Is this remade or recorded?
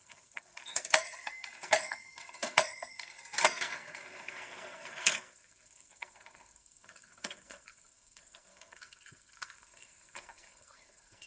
remade